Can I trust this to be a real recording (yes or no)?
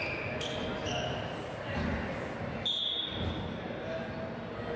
yes